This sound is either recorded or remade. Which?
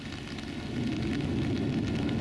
recorded